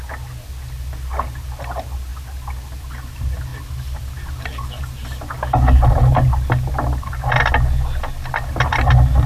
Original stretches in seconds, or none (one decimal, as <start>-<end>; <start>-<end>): 0.0-9.3